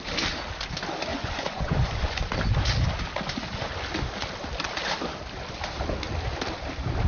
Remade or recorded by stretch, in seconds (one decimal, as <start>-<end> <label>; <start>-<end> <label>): 0.0-1.1 recorded; 1.1-2.2 remade; 2.2-7.1 recorded